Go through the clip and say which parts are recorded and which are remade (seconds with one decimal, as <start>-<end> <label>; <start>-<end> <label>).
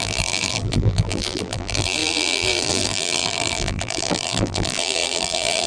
0.0-5.7 remade